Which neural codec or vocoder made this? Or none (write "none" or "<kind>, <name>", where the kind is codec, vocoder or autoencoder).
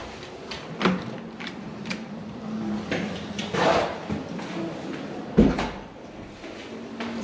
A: vocoder, BigVGAN v2